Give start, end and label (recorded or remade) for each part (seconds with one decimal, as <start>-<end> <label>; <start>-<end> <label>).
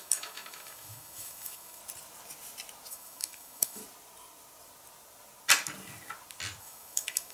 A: 0.0-1.8 remade; 1.8-2.9 recorded; 2.9-3.8 remade; 3.8-6.6 recorded; 6.6-7.3 remade